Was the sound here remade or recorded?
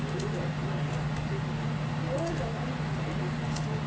recorded